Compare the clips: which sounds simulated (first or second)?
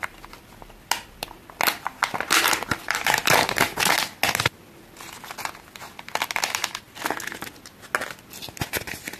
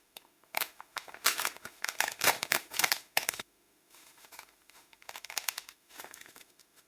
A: second